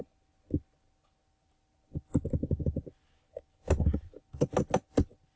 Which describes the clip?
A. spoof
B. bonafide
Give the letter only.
B